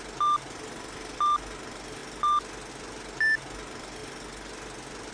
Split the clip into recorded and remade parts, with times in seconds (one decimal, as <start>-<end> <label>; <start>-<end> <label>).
0.0-5.1 recorded